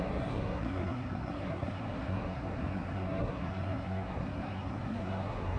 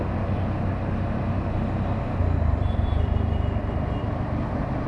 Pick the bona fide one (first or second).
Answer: second